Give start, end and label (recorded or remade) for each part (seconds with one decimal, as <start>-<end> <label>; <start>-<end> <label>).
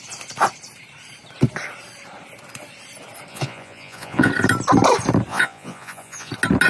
0.0-3.3 recorded; 3.3-4.3 remade; 4.3-5.3 recorded; 5.3-6.3 remade; 6.3-6.7 recorded